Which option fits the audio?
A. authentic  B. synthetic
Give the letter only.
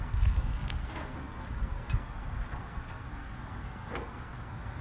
B